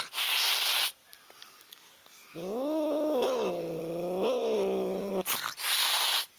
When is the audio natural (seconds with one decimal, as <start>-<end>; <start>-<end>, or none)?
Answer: 0.0-1.4; 3.8-4.4; 5.1-6.4